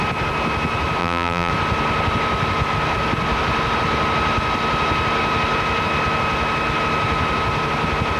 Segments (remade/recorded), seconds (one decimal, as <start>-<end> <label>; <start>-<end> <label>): 0.0-1.0 recorded; 1.0-1.5 remade; 1.5-8.2 recorded